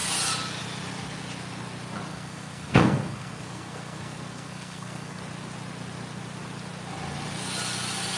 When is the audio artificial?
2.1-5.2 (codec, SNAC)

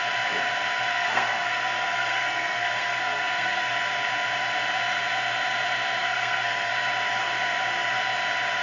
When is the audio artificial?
0.9-3.7 (codec, SNAC); 6.0-6.7

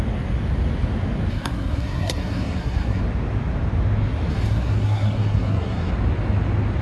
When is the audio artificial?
1.3-3.0 (codec, SNAC); 4.3-5.9

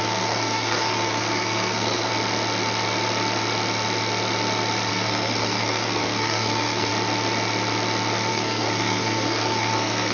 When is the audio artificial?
0.0-2.1 (codec, SNAC); 4.9-6.9; 8.3-10.1